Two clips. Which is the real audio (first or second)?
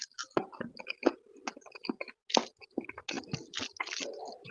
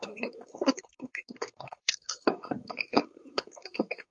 first